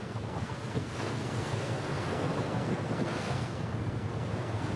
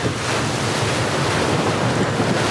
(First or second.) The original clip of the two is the second